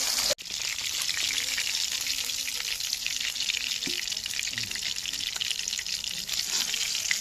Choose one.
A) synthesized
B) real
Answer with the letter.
B